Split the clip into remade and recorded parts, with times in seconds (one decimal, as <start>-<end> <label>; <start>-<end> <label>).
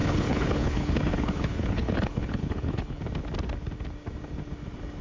0.0-3.0 remade; 3.0-5.0 recorded